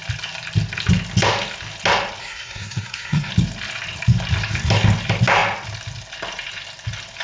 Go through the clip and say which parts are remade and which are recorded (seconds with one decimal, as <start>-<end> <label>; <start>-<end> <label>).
0.0-2.2 recorded; 2.2-3.3 remade; 3.3-7.2 recorded